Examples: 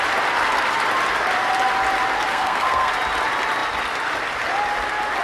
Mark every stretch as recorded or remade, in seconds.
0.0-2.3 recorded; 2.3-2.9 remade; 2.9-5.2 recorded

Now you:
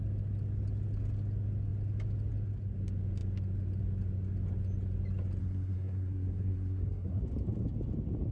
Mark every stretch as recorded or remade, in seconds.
0.0-5.4 recorded; 5.4-7.2 remade; 7.2-8.3 recorded

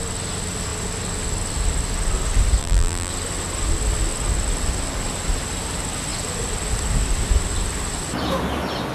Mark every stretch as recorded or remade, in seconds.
0.0-2.6 recorded; 2.6-3.1 remade; 3.1-8.9 recorded

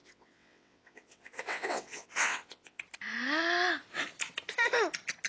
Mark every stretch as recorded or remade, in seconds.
0.0-2.8 remade; 2.8-5.3 recorded

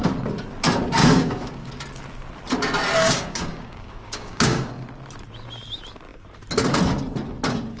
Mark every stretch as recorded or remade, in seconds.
0.0-1.0 recorded; 1.0-1.7 remade; 1.7-3.0 recorded; 3.0-4.7 remade; 4.7-7.8 recorded

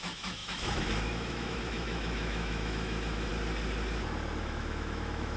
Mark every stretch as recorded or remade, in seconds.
0.0-3.3 remade; 3.3-4.4 recorded; 4.4-5.4 remade

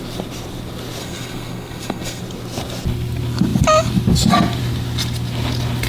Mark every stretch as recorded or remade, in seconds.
0.0-1.0 recorded; 1.0-2.2 remade; 2.2-5.9 recorded